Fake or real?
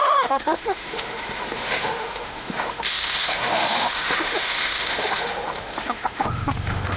fake